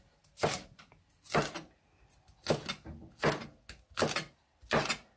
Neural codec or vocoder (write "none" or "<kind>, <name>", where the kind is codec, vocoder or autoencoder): none